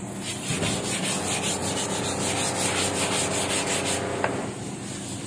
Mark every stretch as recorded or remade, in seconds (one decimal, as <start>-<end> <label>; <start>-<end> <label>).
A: 0.0-5.3 recorded